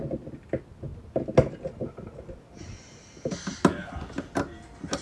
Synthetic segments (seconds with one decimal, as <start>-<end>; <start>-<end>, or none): none